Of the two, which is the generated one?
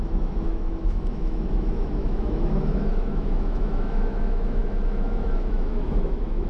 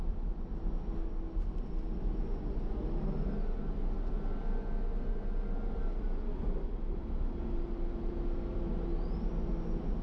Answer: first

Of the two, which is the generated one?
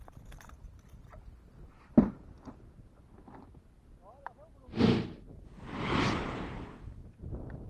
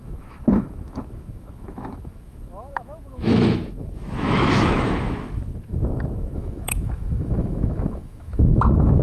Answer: second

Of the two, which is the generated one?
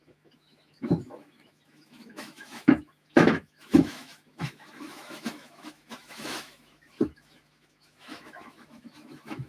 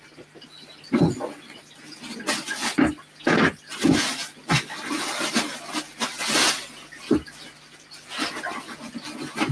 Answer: first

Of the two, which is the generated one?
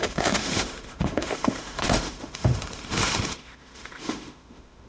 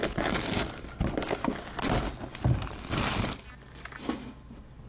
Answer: first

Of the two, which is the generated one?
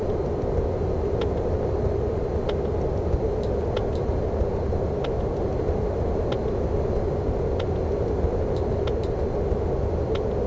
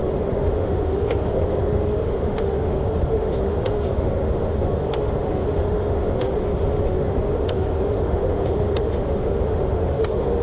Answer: second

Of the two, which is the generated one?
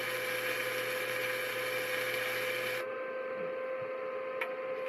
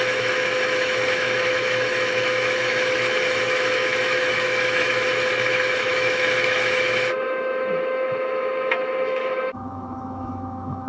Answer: second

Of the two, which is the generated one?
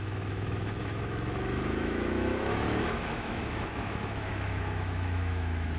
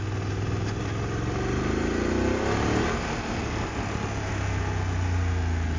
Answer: first